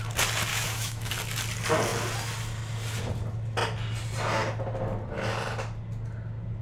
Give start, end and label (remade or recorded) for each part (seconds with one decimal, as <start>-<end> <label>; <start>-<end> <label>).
0.0-0.5 recorded; 0.5-1.1 remade; 1.1-6.6 recorded